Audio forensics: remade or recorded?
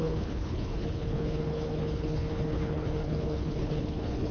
remade